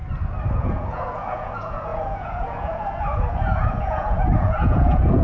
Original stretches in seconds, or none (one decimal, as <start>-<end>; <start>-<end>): 0.0-0.5